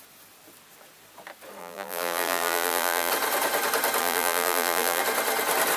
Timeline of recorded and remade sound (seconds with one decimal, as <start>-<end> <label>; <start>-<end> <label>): 0.0-1.6 recorded; 1.6-3.1 remade; 3.1-4.0 recorded; 4.0-5.0 remade; 5.0-5.8 recorded